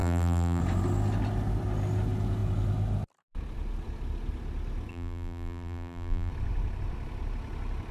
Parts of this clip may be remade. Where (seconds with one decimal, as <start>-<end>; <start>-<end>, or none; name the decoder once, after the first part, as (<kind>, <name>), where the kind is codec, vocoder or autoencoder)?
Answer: 0.0-0.6 (vocoder, BigVGAN v2); 4.9-6.3